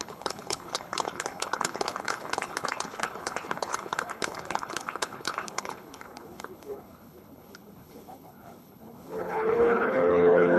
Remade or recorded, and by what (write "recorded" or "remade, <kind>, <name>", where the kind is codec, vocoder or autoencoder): remade, codec, HILCodec